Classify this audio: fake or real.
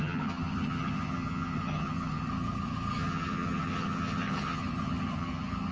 fake